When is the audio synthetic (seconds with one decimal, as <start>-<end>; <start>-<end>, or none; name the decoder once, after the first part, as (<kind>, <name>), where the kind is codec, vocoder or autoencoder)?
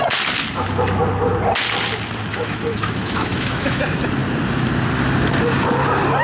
2.3-3.8 (autoencoder, DAC-VAE)